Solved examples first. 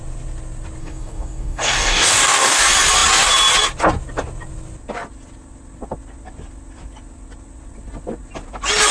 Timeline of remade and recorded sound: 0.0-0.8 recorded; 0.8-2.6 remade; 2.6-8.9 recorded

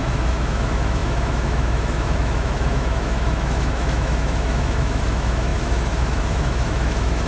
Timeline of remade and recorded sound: 0.0-7.3 remade